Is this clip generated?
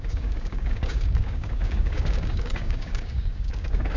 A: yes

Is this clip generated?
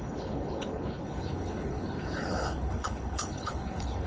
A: yes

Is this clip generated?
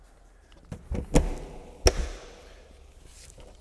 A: no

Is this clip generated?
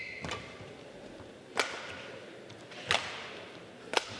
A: no